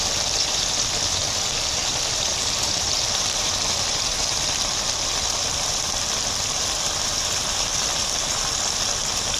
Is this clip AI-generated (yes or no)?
yes